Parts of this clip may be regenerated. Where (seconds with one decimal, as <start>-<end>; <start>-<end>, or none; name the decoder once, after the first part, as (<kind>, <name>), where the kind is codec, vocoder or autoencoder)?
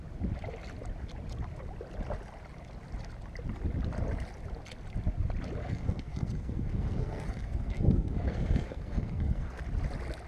5.6-9.6 (codec, SNAC)